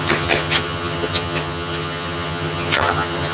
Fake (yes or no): yes